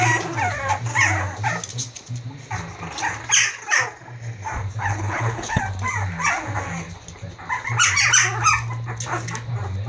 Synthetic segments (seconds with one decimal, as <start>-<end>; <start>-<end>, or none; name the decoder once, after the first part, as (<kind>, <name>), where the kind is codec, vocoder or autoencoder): 4.8-5.6 (codec, HILCodec)